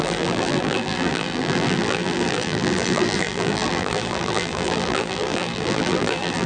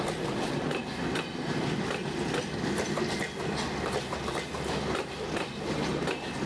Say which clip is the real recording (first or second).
second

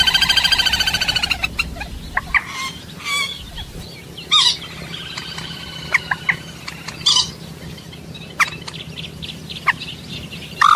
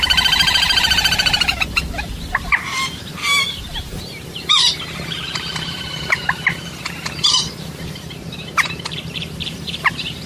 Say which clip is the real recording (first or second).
first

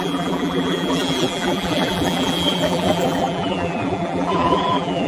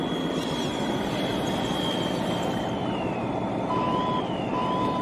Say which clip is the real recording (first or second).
second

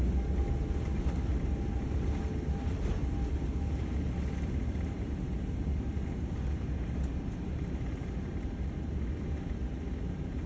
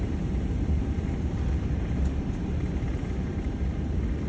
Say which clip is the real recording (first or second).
first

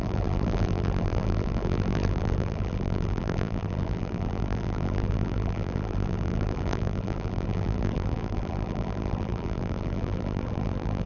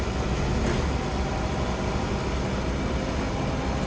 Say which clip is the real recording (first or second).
second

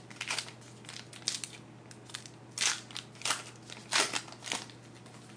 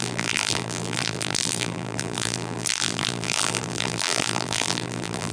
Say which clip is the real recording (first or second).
first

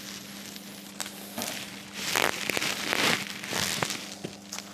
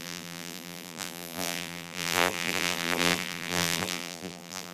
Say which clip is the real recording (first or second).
first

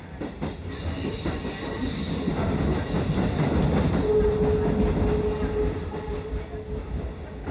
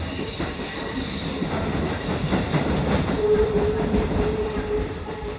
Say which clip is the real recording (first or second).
first